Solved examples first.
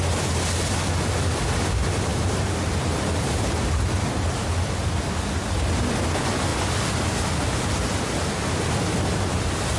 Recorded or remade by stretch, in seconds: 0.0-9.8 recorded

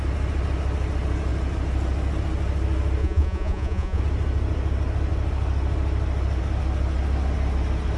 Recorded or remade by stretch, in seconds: 0.0-3.0 recorded; 3.0-4.0 remade; 4.0-8.0 recorded

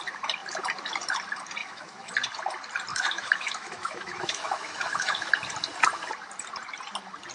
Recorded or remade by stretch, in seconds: 0.0-1.6 recorded; 1.6-2.1 remade; 2.1-2.9 recorded; 2.9-5.3 remade; 5.3-7.3 recorded

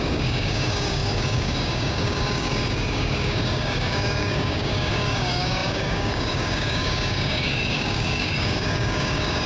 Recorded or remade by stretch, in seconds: 0.0-9.5 remade